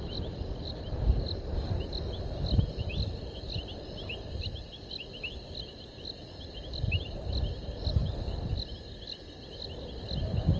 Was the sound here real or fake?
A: fake